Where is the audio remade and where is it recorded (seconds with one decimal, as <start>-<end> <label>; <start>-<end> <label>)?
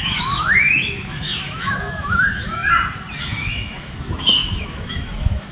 0.0-2.6 remade; 2.6-3.2 recorded; 3.2-5.5 remade